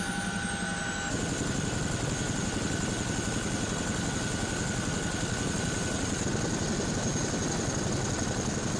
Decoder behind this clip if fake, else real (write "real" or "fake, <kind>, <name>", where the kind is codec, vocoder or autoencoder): real